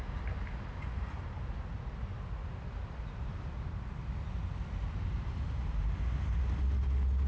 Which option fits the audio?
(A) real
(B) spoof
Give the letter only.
A